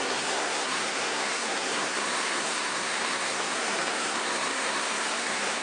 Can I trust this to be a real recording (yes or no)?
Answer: no